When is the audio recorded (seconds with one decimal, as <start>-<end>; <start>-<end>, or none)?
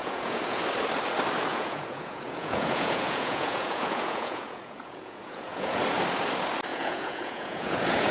0.6-1.5; 5.8-6.7